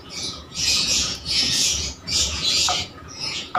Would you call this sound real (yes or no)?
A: no